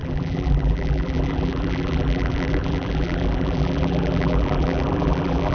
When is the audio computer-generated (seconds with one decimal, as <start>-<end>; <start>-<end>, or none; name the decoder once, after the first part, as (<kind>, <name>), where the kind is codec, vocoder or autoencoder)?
0.0-5.5 (vocoder, BigVGAN v2)